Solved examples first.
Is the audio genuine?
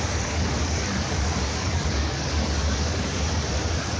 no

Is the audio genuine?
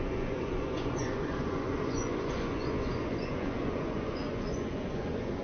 no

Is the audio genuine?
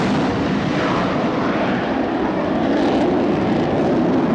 yes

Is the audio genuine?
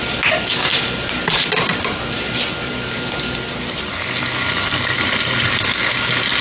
yes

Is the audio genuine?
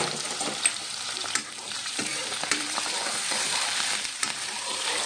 no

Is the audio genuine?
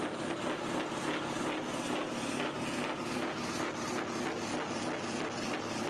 yes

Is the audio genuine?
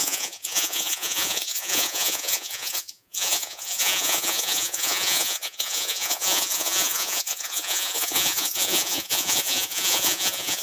no